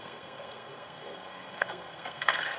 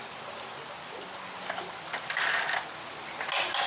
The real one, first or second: second